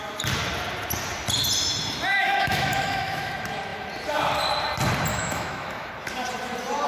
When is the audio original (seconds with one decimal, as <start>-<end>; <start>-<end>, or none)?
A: 0.0-2.1; 3.3-5.1; 5.9-6.9